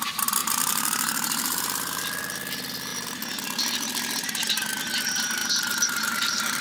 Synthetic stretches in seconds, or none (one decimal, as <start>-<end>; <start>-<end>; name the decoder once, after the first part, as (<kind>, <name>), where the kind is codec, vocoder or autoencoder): 0.4-2.0 (vocoder, BigVGAN v2); 5.4-6.6